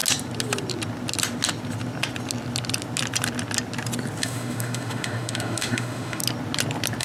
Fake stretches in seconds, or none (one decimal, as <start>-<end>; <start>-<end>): 4.2-6.2

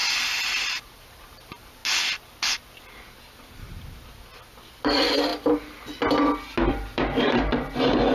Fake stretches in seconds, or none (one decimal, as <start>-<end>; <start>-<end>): 0.0-1.8; 4.8-5.3; 6.7-8.1

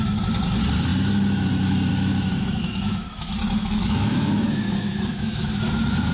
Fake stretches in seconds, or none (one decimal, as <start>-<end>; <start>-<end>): 1.9-5.6

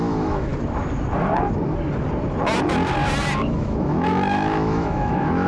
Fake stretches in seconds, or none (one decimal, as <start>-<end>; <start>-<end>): 0.0-0.5; 3.4-5.5

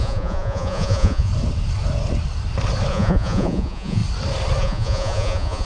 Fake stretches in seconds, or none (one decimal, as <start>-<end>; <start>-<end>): 0.0-1.3; 2.9-4.0; 4.6-5.6

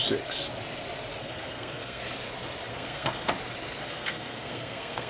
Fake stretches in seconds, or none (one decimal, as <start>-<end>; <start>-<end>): 1.2-2.0; 2.7-3.3; 3.8-5.1

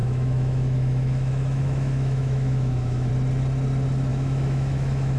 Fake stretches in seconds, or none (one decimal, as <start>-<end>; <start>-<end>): 0.0-3.1; 4.1-5.2